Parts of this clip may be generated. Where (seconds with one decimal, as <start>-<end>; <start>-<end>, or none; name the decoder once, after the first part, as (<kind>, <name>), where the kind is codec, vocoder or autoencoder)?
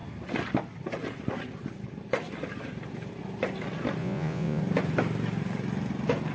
4.0-4.6 (vocoder, Vocos)